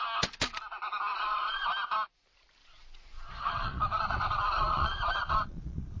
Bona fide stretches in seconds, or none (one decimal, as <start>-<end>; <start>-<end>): 0.0-1.1; 1.7-2.6